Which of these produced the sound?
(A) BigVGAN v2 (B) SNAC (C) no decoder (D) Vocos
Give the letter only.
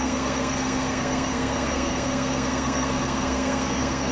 B